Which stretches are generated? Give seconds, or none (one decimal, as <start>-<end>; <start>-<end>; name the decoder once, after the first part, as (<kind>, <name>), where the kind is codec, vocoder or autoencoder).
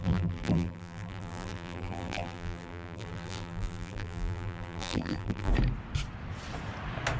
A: 0.0-5.5 (vocoder, BigVGAN v2)